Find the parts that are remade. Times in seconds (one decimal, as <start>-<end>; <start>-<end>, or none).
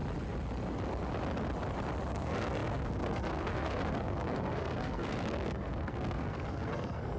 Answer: 2.1-7.2